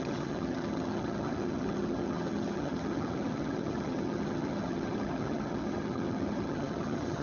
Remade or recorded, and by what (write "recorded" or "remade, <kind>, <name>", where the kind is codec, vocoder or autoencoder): remade, vocoder, HiFi-GAN